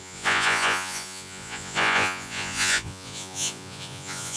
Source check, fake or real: fake